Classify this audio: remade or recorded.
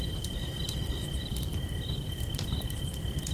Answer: recorded